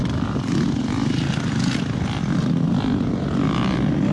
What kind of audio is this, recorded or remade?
recorded